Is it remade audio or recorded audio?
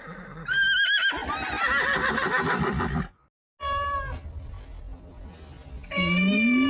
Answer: recorded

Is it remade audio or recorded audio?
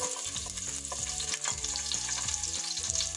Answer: recorded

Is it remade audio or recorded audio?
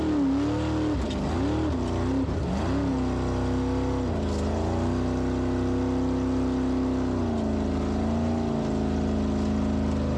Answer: recorded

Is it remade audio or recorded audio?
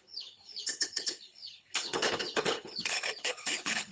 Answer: remade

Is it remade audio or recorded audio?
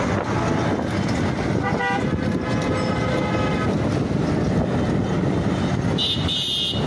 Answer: recorded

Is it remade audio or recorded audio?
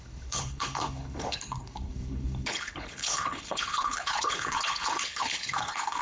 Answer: remade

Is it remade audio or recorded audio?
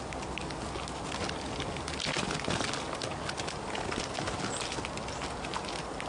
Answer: recorded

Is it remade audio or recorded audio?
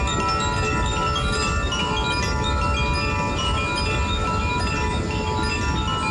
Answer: recorded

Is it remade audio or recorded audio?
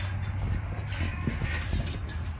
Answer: recorded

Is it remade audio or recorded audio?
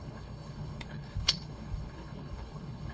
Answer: remade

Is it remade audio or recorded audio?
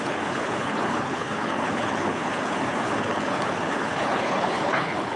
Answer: remade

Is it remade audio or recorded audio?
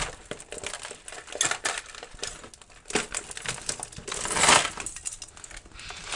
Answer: recorded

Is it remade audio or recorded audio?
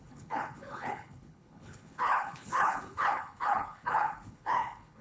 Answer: remade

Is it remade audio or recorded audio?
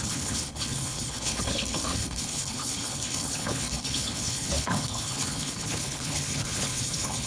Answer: remade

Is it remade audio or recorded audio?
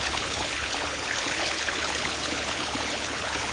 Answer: remade